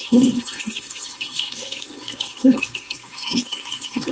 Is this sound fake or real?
fake